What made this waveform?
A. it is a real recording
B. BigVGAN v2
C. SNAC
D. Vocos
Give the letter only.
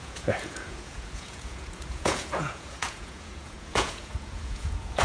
D